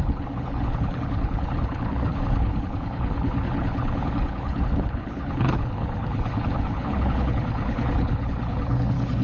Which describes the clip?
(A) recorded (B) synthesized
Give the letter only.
B